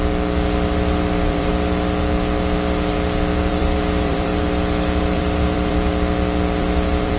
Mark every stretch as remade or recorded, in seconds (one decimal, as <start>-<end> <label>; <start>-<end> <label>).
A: 0.0-1.5 remade; 1.5-3.5 recorded; 3.5-4.3 remade; 4.3-5.0 recorded; 5.0-5.9 remade; 5.9-6.6 recorded; 6.6-7.2 remade